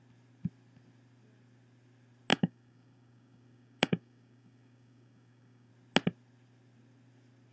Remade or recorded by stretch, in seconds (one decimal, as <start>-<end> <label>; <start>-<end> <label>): 0.0-2.3 recorded; 2.3-5.7 remade; 5.7-7.5 recorded